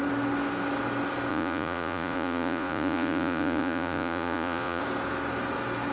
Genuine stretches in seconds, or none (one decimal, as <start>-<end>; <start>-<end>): 0.0-1.3; 4.8-5.9